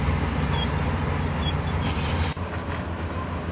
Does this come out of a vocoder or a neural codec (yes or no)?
no